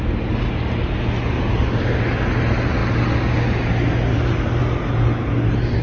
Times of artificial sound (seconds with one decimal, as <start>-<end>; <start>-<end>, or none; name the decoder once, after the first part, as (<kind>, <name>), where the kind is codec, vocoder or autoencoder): none